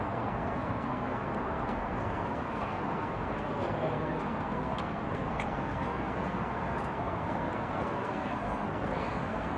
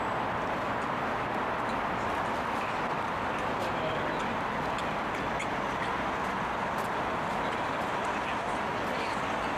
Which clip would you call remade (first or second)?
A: first